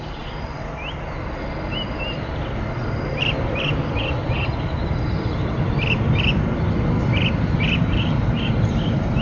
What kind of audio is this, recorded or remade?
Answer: recorded